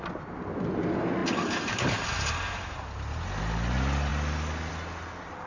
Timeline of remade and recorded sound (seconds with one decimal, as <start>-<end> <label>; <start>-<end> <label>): 0.0-5.5 recorded